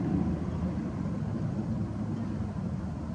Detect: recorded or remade remade